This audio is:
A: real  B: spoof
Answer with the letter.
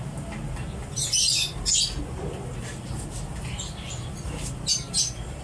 A